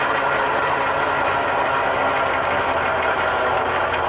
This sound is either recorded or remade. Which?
recorded